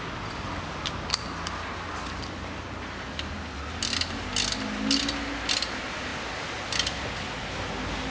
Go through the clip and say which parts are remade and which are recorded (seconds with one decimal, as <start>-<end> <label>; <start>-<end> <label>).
0.0-8.1 recorded